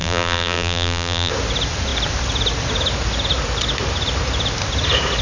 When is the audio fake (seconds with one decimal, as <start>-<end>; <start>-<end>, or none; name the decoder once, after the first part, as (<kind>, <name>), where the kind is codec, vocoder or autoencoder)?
0.0-1.3 (vocoder, BigVGAN v2)